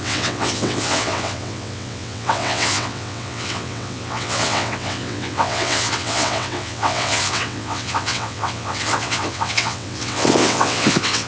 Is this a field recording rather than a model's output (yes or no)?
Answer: no